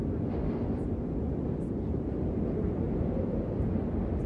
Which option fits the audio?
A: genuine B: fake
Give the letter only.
A